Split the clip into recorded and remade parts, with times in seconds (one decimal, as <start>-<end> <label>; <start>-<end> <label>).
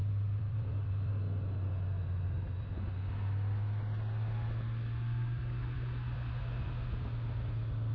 0.0-1.1 remade; 1.1-7.9 recorded